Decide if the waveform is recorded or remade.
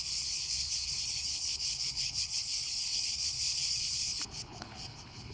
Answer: remade